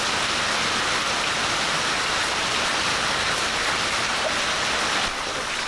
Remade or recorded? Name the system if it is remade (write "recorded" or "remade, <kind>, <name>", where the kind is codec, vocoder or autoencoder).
recorded